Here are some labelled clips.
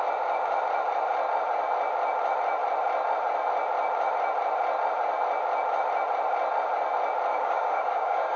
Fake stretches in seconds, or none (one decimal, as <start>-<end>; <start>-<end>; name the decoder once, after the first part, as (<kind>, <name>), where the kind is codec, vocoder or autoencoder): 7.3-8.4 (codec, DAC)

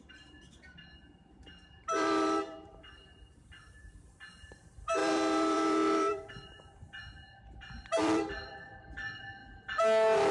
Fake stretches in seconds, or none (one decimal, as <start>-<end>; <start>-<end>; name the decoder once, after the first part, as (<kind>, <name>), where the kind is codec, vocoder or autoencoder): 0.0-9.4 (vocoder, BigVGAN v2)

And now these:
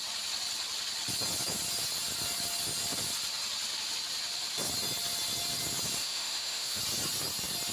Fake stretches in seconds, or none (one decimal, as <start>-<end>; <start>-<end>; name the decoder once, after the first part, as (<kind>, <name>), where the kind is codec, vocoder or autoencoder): 6.0-6.8 (autoencoder, DAC-VAE)